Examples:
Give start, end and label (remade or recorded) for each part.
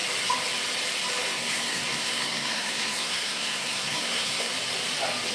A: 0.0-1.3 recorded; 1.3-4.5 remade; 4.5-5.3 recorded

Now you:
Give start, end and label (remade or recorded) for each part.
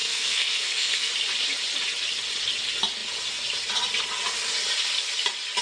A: 0.0-1.1 remade; 1.1-5.6 recorded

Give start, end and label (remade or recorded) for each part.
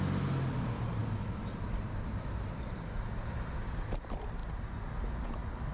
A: 0.0-5.7 recorded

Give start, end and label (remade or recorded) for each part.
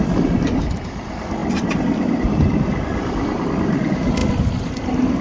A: 0.0-1.4 remade; 1.4-2.2 recorded; 2.2-4.2 remade; 4.2-5.2 recorded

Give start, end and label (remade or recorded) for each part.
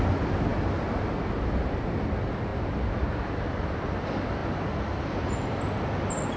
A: 0.0-6.4 recorded